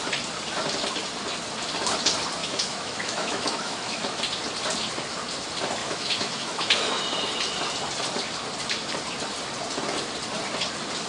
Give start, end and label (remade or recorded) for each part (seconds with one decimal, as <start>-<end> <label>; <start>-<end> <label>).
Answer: 0.0-2.4 recorded; 2.4-4.2 remade; 4.2-5.8 recorded; 5.8-7.0 remade; 7.0-11.1 recorded